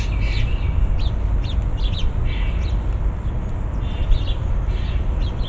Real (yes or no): yes